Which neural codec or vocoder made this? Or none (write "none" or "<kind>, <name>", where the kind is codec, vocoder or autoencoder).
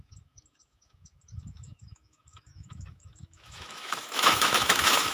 autoencoder, DAC-VAE